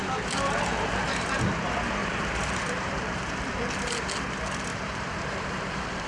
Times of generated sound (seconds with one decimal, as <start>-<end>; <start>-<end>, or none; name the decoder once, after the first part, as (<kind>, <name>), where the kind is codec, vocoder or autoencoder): 0.0-1.4 (vocoder, BigVGAN v2); 2.0-4.1; 4.7-6.1